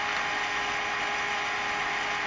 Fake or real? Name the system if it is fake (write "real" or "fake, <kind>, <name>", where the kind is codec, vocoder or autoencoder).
real